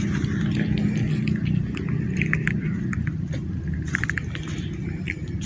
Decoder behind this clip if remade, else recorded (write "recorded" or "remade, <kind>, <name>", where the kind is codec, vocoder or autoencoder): recorded